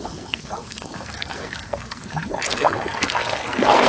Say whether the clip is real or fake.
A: fake